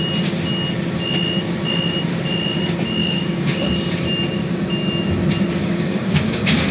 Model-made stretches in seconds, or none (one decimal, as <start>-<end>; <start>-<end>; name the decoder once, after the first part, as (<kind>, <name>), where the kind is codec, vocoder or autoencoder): 3.0-3.7 (codec, DAC); 5.6-6.7